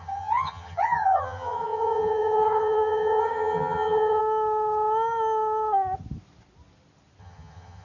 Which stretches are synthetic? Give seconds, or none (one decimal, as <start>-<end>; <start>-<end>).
0.0-4.2; 7.2-7.8